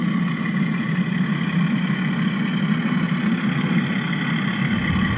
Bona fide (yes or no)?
yes